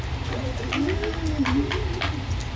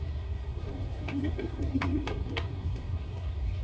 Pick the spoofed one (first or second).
second